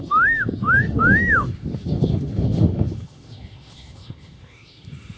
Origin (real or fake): fake